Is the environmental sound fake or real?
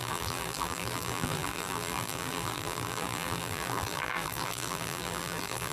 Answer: fake